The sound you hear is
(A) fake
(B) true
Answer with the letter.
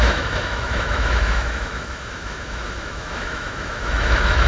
A